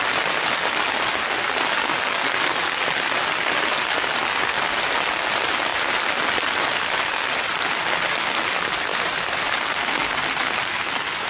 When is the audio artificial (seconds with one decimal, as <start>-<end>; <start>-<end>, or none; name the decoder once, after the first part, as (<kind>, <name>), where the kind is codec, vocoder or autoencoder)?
8.9-9.6 (vocoder, BigVGAN v2)